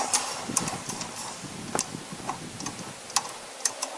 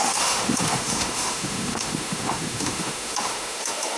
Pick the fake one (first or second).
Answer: second